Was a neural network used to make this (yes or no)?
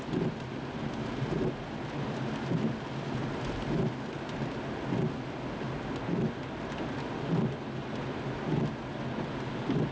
no